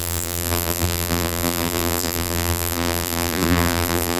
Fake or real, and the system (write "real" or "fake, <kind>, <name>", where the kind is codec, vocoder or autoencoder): fake, vocoder, BigVGAN v2